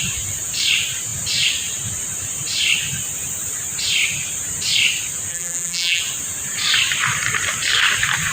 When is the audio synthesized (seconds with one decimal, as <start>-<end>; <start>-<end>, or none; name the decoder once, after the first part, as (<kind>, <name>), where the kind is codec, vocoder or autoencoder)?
5.3-6.0 (vocoder, BigVGAN v2)